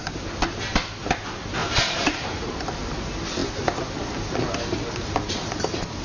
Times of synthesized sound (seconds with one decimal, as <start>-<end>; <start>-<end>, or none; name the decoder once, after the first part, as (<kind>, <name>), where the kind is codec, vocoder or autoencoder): 1.6-2.5 (vocoder, BigVGAN v2)